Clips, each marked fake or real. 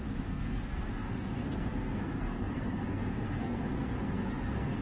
fake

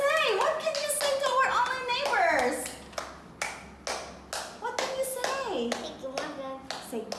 real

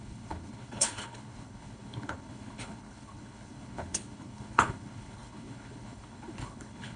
fake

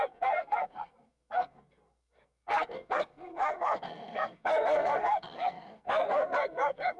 fake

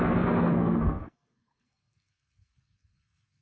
fake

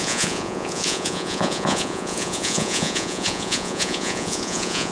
fake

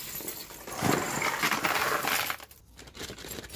real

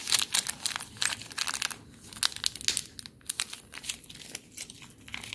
real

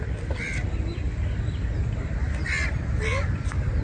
real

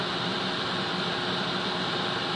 real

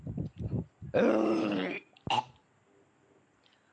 real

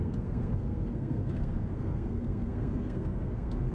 fake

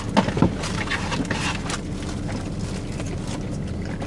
real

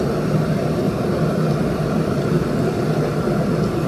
real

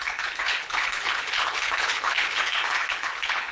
fake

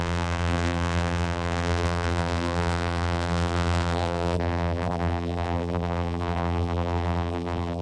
fake